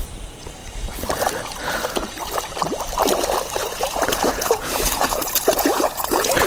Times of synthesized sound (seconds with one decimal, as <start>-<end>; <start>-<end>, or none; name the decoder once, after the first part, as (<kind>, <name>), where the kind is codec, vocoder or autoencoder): 3.6-6.5 (vocoder, Vocos)